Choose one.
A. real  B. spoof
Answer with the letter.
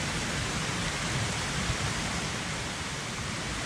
A